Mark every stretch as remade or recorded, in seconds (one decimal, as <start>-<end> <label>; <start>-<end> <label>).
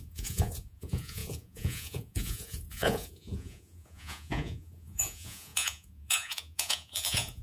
0.0-7.4 remade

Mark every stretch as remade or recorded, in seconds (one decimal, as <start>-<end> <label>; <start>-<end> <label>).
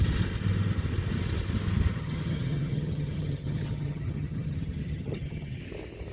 0.0-1.9 recorded; 1.9-5.6 remade; 5.6-6.1 recorded